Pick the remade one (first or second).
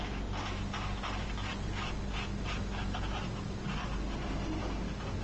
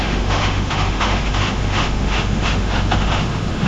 second